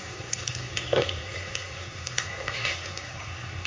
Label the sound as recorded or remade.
remade